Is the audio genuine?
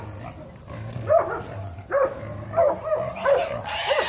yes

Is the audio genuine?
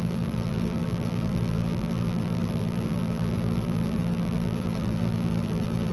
no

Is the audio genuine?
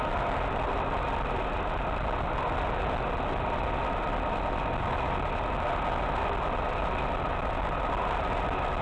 yes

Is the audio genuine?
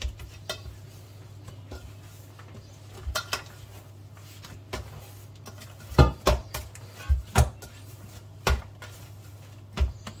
yes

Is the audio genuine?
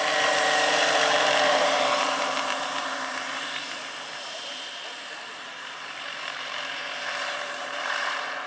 no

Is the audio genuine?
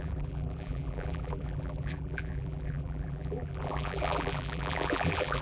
no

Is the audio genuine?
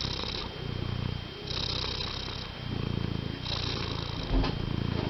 yes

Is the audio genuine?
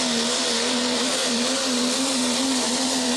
no